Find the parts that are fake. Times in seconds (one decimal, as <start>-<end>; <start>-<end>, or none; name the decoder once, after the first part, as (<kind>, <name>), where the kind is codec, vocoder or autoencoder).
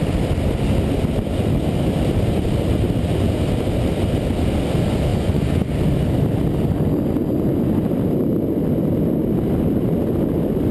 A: 5.1-5.7 (vocoder, Vocos)